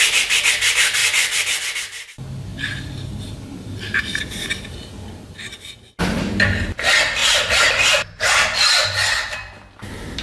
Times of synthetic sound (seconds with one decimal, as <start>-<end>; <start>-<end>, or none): 7.2-7.9